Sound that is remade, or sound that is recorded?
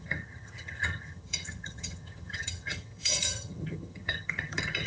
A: remade